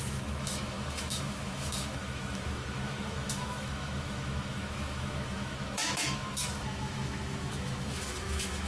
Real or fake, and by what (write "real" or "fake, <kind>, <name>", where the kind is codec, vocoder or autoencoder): fake, autoencoder, DAC-VAE